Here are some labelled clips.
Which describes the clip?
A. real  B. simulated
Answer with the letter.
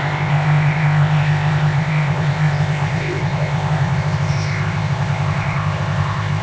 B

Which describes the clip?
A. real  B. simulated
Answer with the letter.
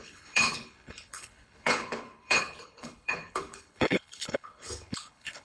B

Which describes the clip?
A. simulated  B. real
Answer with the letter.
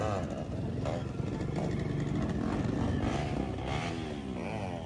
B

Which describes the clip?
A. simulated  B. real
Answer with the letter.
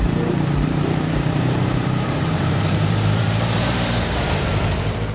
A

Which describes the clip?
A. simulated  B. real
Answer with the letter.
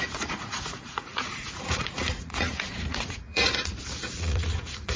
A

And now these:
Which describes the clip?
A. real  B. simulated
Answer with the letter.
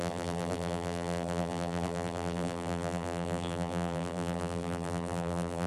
B